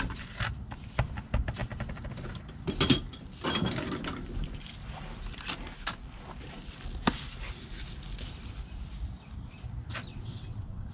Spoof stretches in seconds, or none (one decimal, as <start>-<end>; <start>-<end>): 10.1-10.9